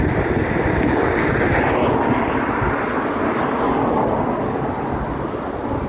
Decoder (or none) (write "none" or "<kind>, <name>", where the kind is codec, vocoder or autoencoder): none